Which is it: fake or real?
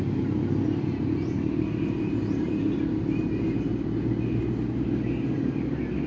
real